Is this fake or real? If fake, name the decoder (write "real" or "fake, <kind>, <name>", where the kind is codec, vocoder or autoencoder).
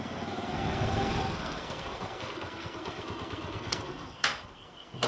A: fake, codec, SNAC